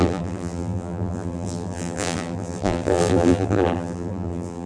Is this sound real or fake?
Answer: fake